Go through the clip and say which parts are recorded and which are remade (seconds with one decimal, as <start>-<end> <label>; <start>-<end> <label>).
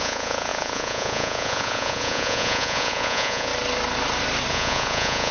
0.0-3.5 remade; 3.5-4.5 recorded; 4.5-5.3 remade